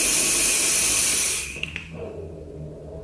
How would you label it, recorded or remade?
recorded